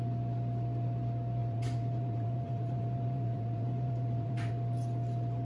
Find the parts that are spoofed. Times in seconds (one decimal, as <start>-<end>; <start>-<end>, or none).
1.4-4.5